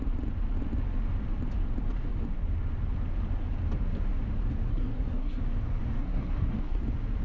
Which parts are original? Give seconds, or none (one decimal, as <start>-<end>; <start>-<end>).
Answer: 0.0-4.7; 5.4-6.0; 6.8-7.2